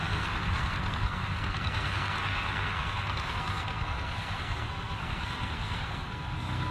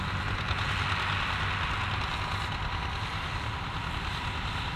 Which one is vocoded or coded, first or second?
first